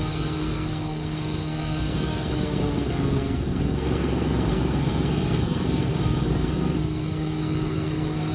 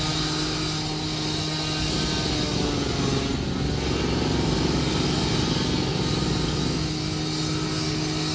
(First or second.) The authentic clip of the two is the second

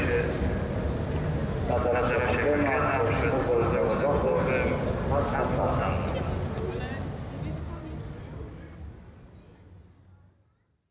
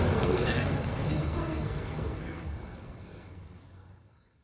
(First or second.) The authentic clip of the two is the first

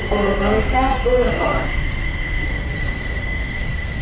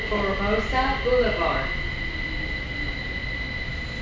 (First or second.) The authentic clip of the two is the second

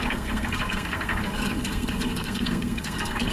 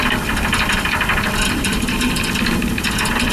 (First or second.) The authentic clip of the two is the second